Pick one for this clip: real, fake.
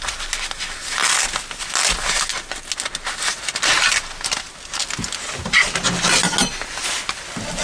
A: real